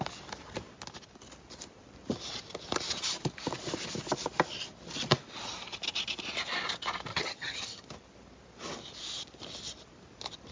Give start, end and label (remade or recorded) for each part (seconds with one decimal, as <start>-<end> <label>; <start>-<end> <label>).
0.0-7.1 recorded; 7.1-7.8 remade; 7.8-10.5 recorded